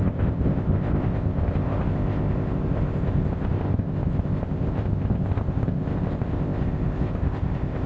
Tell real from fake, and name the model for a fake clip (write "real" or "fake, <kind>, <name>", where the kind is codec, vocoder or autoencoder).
fake, codec, ZipCodec